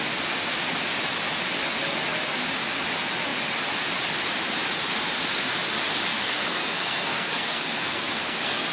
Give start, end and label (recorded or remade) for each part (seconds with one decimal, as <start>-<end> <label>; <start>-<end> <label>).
0.0-6.1 recorded; 6.1-8.7 remade